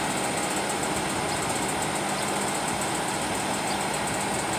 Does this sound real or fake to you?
real